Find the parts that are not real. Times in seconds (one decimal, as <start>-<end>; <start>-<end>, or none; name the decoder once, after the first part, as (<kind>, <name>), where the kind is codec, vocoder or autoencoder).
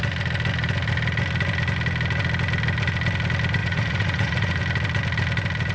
3.6-4.6 (vocoder, Vocos)